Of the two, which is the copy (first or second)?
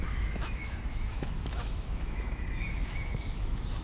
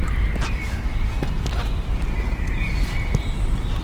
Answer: first